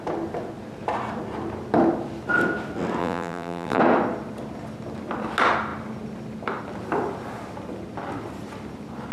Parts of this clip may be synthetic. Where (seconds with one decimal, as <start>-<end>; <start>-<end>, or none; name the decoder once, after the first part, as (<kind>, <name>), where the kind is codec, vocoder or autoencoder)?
3.0-3.8 (vocoder, BigVGAN v2)